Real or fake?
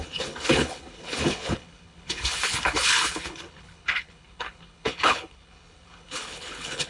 fake